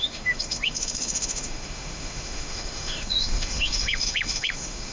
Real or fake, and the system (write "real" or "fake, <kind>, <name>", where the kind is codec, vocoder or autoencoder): fake, autoencoder, DAC-VAE